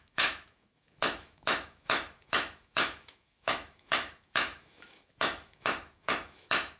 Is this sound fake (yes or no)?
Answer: yes